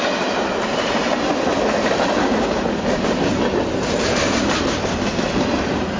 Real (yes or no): yes